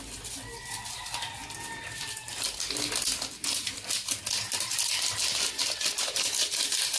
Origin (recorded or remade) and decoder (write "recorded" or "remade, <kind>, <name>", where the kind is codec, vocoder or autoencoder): recorded